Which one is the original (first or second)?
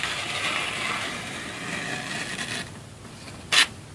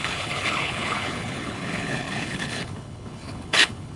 first